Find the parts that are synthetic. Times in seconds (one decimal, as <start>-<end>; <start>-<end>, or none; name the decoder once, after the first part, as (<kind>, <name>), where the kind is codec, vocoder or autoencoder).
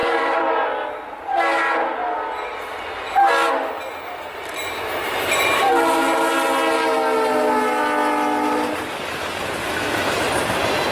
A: 0.0-0.5 (vocoder, BigVGAN v2)